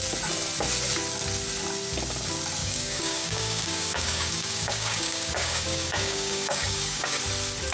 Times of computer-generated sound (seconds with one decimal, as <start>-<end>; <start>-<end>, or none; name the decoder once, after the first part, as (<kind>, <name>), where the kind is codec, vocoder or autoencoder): 2.6-7.2 (codec, DAC)